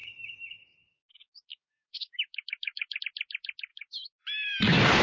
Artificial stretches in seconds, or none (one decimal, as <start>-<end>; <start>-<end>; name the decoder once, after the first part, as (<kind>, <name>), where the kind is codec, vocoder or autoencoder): 0.0-3.0 (codec, DAC); 3.7-4.2

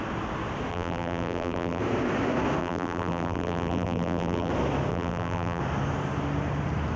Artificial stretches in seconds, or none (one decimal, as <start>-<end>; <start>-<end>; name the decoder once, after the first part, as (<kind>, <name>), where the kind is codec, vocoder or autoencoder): 0.7-1.8 (vocoder, BigVGAN v2); 2.6-4.5; 4.9-5.6

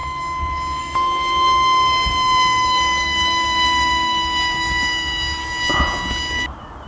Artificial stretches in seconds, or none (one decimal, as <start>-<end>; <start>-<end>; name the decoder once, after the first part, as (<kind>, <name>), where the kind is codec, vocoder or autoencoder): 0.8-5.4 (autoencoder, DAC-VAE)

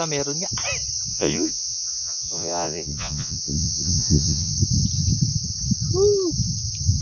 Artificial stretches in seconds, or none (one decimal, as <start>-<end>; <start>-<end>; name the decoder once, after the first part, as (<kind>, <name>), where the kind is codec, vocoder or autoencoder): 1.1-4.5 (vocoder, Vocos)